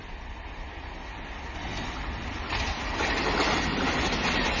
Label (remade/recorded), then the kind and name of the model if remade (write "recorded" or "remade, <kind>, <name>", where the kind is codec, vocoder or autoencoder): recorded